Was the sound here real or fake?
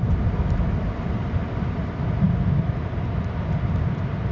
real